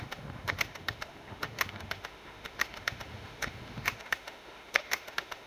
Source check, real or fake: fake